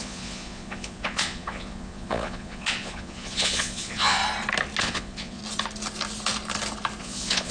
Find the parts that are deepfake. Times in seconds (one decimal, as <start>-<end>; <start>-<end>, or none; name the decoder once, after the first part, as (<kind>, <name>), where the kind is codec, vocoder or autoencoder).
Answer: 0.0-4.2 (vocoder, Vocos); 4.8-5.4; 7.0-7.5